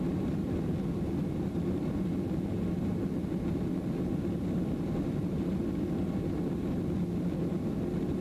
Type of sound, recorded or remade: recorded